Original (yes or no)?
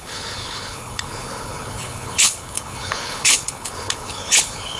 no